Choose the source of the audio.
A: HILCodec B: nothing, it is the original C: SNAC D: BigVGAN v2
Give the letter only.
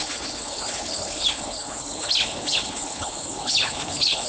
A